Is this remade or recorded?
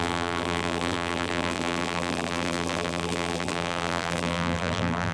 remade